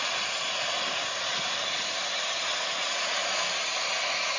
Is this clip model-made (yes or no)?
no